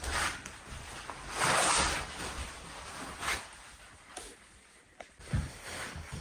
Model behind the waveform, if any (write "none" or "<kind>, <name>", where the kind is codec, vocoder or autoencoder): none